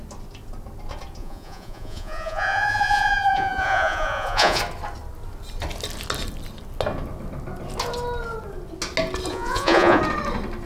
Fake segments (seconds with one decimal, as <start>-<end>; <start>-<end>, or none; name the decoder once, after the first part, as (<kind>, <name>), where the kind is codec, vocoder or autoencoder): 1.2-4.6 (vocoder, Vocos); 9.3-10.0